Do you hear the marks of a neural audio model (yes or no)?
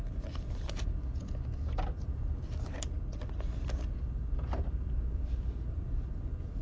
no